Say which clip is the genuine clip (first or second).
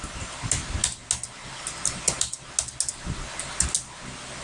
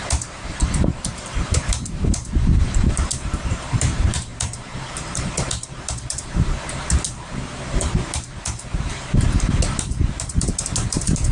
first